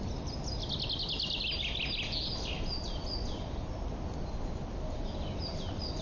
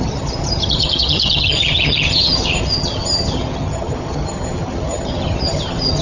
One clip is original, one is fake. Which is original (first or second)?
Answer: first